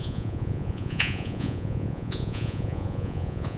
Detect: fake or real fake